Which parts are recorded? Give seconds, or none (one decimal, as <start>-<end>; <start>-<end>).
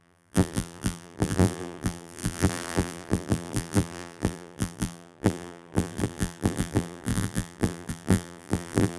none